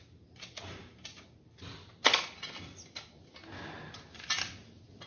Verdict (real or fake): real